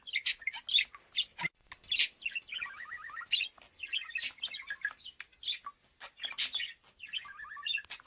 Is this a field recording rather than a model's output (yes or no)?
yes